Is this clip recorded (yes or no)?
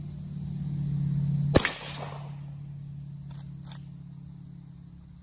yes